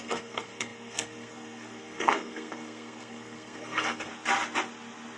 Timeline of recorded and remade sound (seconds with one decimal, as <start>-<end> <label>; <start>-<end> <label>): 0.0-4.1 remade; 4.1-5.2 recorded